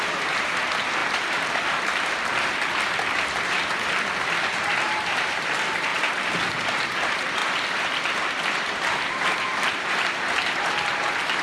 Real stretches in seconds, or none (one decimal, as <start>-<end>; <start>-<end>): 0.0-1.0; 3.4-7.4; 9.7-11.4